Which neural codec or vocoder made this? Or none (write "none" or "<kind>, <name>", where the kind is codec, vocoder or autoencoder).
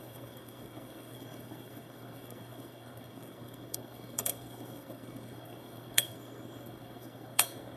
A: codec, SNAC